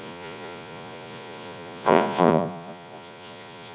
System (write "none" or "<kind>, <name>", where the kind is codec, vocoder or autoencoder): vocoder, Vocos